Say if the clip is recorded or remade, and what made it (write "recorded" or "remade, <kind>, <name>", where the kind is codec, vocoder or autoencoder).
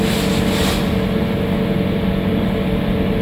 recorded